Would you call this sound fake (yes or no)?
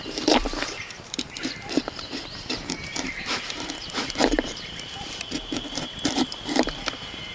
yes